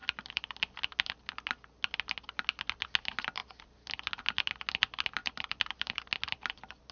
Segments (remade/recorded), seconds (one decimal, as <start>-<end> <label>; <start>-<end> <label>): 0.0-0.8 remade; 0.8-5.2 recorded; 5.2-6.0 remade; 6.0-6.9 recorded